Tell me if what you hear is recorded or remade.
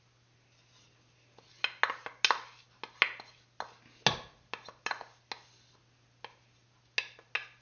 recorded